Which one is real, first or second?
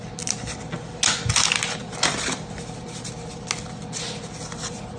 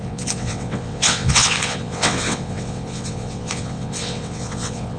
first